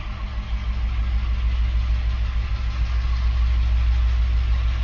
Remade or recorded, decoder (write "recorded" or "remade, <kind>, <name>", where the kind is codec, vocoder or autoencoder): recorded